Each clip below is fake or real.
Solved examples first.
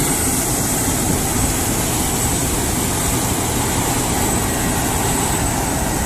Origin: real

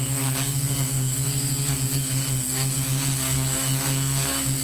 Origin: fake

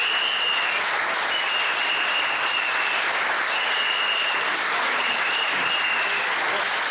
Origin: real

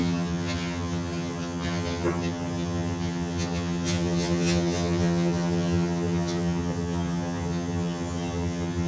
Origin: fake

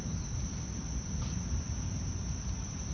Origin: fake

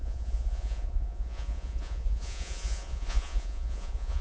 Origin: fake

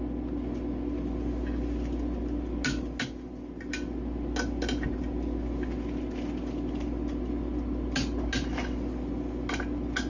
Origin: real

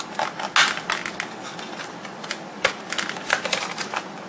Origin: real